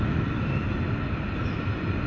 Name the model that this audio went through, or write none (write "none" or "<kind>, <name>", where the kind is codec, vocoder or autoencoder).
none